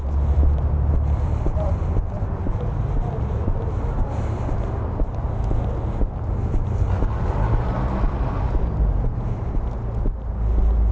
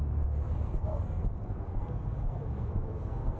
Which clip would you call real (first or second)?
first